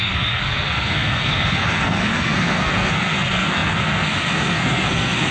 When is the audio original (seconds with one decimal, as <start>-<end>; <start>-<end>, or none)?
none